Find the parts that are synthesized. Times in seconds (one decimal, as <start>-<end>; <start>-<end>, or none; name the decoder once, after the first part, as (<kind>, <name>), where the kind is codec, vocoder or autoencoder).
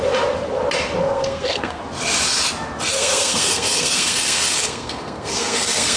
1.0-1.8 (codec, SNAC); 2.9-6.0